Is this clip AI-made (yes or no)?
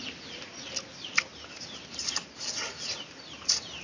no